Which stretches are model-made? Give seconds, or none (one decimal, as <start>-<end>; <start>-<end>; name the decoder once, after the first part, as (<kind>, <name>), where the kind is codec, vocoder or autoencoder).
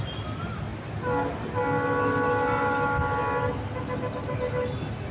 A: none